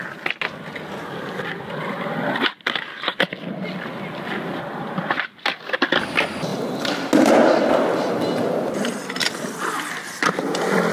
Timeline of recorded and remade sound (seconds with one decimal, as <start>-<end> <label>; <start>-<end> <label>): 0.0-10.9 recorded